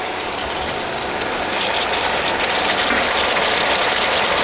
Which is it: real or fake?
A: real